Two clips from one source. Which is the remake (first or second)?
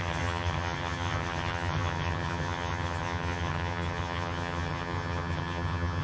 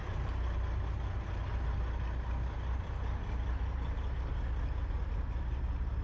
first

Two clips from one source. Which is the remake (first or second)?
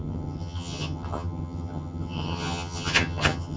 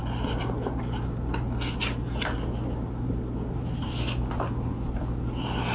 first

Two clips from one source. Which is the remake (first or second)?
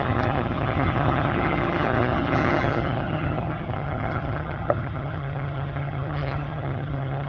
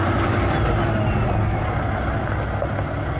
first